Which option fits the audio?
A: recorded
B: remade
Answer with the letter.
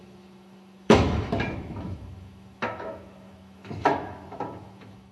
B